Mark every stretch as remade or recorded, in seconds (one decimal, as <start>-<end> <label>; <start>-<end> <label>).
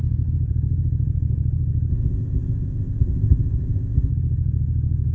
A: 0.0-1.9 recorded; 1.9-4.1 remade; 4.1-5.1 recorded